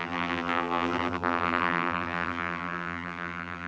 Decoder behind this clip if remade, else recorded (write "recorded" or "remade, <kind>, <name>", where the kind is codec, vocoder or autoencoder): remade, vocoder, BigVGAN v2